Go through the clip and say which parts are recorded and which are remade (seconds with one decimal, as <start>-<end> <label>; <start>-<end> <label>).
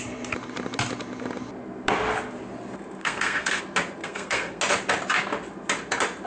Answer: 0.0-3.0 recorded; 3.0-3.6 remade; 3.6-4.0 recorded; 4.0-4.6 remade; 4.6-6.3 recorded